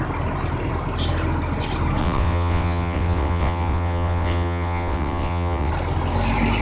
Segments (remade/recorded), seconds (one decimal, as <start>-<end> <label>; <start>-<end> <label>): 0.0-2.0 recorded; 2.0-5.7 remade; 5.7-6.6 recorded